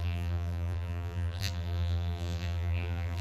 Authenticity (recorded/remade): remade